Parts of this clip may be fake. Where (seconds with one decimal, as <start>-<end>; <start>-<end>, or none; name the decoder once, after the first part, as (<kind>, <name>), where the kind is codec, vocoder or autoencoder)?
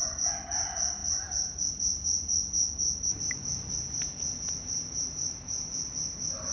none